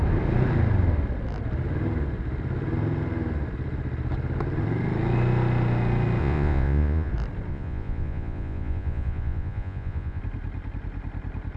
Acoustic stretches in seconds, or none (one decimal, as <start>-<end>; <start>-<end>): 0.0-6.2; 7.1-7.5; 10.2-11.6